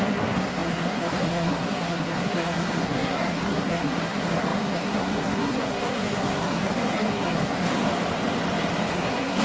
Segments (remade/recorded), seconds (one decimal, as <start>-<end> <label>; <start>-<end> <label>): 0.0-7.9 remade; 7.9-8.9 recorded; 8.9-9.4 remade